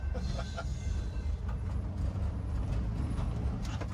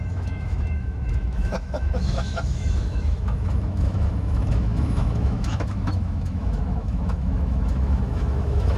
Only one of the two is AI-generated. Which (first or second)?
second